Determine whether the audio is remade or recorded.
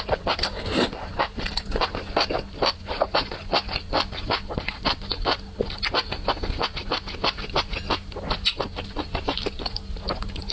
recorded